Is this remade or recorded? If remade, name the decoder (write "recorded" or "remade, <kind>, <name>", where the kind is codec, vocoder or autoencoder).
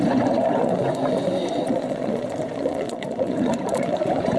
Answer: remade, vocoder, Vocos